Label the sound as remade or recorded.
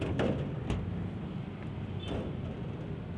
recorded